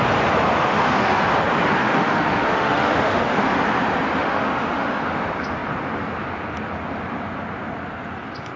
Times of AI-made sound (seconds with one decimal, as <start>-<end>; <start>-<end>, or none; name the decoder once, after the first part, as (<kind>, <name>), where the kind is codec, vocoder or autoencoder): 0.6-1.2 (autoencoder, DAC-VAE); 1.8-3.4; 4.2-5.0